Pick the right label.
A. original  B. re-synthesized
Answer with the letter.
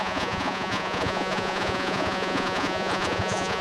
B